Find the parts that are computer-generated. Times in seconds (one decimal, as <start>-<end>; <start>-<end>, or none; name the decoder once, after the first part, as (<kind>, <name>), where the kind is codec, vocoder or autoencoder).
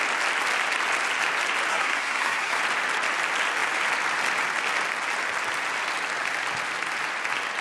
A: 1.7-2.6 (codec, SNAC)